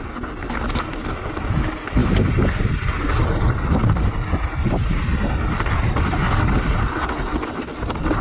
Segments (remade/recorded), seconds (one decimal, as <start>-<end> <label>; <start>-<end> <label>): 0.0-8.2 recorded